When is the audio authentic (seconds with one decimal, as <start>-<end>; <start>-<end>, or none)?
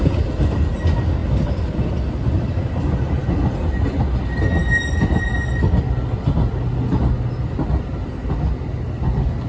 0.0-9.5